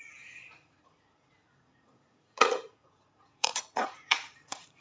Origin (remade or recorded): remade